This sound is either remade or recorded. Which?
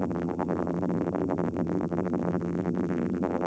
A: remade